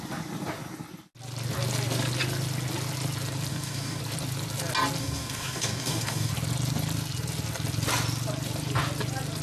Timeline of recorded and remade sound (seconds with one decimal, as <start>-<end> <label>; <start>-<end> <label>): 0.0-3.5 recorded; 3.5-4.0 remade; 4.0-5.0 recorded; 5.0-6.3 remade; 6.3-9.4 recorded

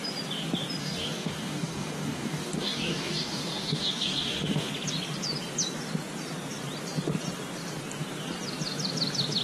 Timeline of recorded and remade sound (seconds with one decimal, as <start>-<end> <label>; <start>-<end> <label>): 0.0-0.8 recorded; 0.8-4.7 remade; 4.7-9.4 recorded

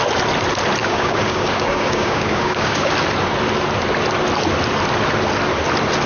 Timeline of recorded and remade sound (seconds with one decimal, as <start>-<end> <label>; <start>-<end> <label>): 0.0-0.8 recorded; 0.8-2.9 remade; 2.9-6.1 recorded

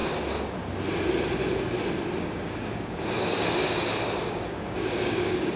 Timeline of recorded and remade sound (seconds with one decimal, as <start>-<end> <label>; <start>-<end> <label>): 0.0-2.2 recorded; 2.2-3.6 remade; 3.6-4.2 recorded; 4.2-5.6 remade

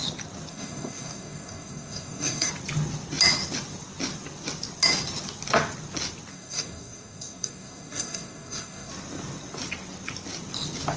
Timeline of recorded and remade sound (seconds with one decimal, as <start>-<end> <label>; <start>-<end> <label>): 0.0-0.5 recorded; 0.5-2.5 remade; 2.5-6.3 recorded; 6.3-8.9 remade; 8.9-11.0 recorded

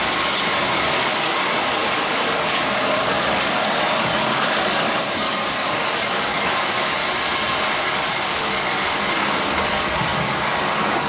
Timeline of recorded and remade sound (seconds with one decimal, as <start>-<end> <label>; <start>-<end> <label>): 0.0-7.0 remade; 7.0-7.8 recorded; 7.8-11.1 remade

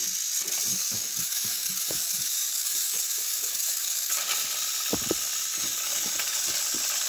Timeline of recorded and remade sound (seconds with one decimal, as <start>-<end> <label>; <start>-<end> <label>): 0.0-0.7 recorded; 0.7-4.2 remade; 4.2-5.5 recorded; 5.5-6.4 remade; 6.4-7.1 recorded